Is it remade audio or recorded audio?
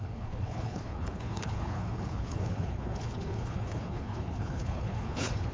remade